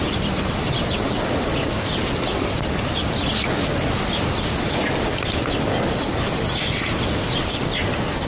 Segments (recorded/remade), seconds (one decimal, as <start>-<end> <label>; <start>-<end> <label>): 0.0-8.3 recorded